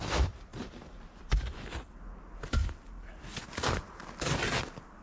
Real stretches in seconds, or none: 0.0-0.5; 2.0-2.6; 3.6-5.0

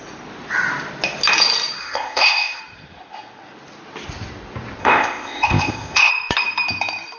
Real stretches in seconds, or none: 0.0-1.8; 2.6-4.8; 6.1-7.2

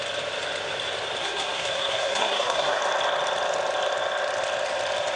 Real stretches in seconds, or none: 0.0-1.2; 2.8-5.2

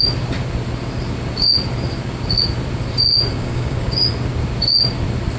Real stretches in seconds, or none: 0.0-3.3; 4.0-5.4

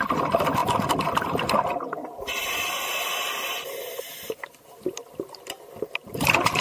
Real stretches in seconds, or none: 0.0-6.0